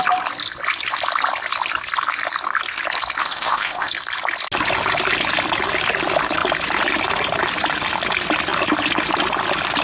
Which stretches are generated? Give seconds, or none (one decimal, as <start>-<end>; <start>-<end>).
3.2-3.9